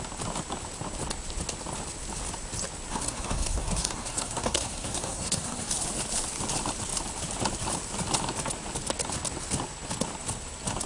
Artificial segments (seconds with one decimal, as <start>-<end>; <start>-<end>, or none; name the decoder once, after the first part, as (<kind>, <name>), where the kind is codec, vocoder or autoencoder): 2.9-5.7 (codec, SNAC)

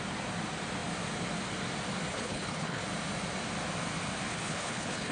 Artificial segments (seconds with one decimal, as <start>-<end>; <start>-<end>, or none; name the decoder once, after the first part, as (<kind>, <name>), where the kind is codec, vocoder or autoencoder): 2.1-2.8 (codec, HILCodec); 4.3-5.1

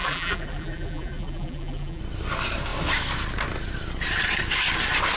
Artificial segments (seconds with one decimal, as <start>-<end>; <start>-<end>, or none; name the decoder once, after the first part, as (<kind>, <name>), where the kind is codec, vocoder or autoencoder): 0.0-2.0 (vocoder, BigVGAN v2)

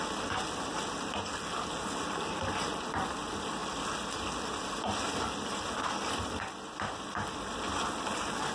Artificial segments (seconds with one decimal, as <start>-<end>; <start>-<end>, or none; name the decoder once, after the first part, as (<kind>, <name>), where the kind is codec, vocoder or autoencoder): none

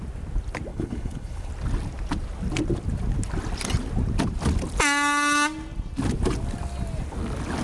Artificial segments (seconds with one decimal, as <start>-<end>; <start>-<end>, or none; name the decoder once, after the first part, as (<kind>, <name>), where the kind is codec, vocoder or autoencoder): 0.7-1.5 (codec, HILCodec)

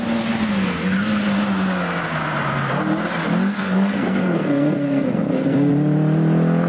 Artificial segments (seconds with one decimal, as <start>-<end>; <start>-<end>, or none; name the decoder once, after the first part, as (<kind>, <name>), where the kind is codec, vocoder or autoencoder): 3.5-5.7 (codec, SNAC)